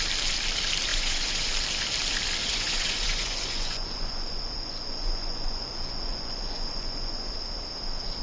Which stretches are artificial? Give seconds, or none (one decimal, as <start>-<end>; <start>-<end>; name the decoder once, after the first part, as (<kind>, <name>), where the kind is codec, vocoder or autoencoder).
0.9-1.5 (vocoder, Vocos); 2.4-7.3